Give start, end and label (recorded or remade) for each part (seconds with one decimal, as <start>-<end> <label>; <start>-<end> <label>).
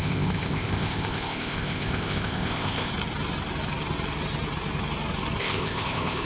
0.0-2.9 remade; 2.9-5.4 recorded; 5.4-6.3 remade